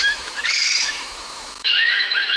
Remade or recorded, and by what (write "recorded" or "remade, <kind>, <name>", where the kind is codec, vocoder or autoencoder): remade, autoencoder, DAC-VAE